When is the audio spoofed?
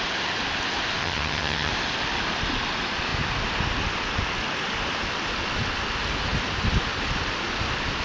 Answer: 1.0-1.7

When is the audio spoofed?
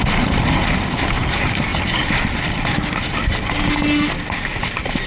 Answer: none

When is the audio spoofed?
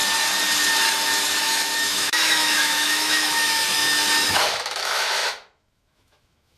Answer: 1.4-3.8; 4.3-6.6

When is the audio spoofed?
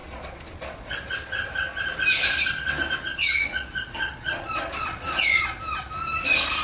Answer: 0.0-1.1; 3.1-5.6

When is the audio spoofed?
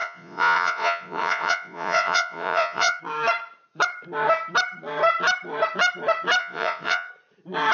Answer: 0.0-3.0; 6.4-7.1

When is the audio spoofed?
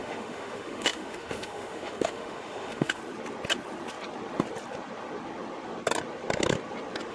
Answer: 0.0-3.0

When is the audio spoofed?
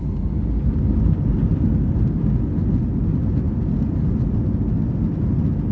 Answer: none